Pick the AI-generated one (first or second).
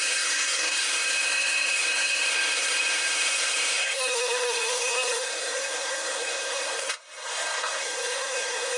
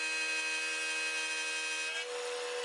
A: first